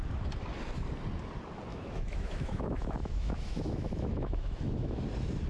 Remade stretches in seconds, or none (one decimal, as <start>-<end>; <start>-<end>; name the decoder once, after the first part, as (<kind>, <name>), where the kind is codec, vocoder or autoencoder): 1.7-5.0 (autoencoder, DAC-VAE)